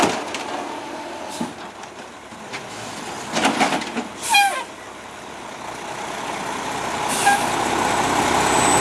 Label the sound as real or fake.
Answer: real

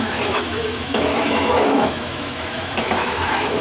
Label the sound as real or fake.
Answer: fake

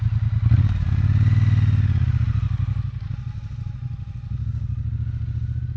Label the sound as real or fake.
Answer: real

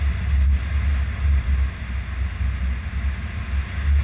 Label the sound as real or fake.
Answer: real